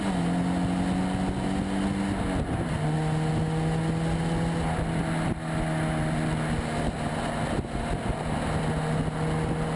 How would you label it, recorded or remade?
recorded